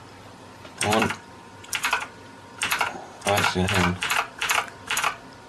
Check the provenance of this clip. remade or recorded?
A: remade